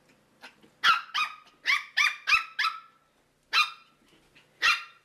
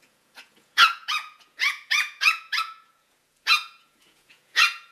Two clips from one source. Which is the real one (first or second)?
first